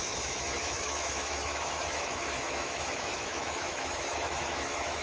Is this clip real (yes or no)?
no